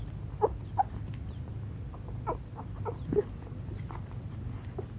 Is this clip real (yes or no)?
yes